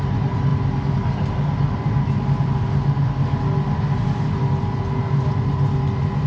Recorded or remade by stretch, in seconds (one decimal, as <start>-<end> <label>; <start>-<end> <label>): 0.0-6.3 recorded